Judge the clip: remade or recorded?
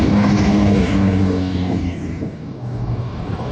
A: remade